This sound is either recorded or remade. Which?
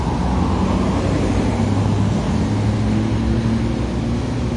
recorded